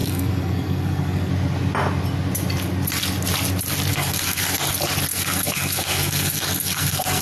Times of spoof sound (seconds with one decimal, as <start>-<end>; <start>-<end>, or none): 0.0-1.3; 3.9-4.6; 5.1-7.2